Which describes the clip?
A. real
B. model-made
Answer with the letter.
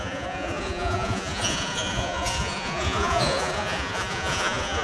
B